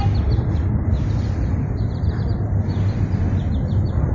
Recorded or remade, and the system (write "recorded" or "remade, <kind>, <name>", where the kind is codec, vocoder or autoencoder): remade, vocoder, BigVGAN v2